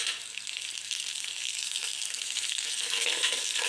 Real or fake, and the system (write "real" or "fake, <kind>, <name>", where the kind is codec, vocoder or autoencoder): fake, codec, SNAC